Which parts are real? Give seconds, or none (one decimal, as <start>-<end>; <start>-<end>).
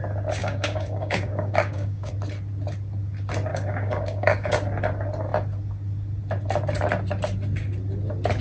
0.0-0.4; 2.1-3.5; 4.5-8.4